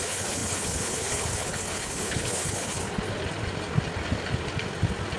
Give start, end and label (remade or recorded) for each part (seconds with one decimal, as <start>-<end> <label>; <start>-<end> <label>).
0.0-2.8 remade; 2.8-5.2 recorded